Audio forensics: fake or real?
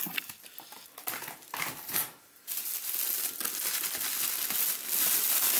real